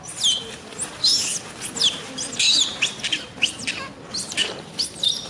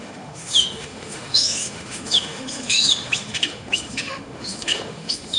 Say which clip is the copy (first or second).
second